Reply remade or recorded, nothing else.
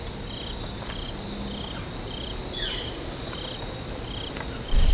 recorded